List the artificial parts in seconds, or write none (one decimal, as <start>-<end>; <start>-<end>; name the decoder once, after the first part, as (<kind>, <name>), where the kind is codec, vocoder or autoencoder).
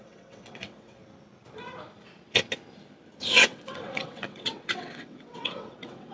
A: 0.0-1.0 (vocoder, WaveNeXt); 3.3-6.1